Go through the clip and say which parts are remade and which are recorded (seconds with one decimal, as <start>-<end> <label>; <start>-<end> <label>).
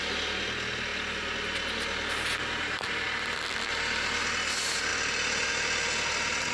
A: 0.0-6.5 recorded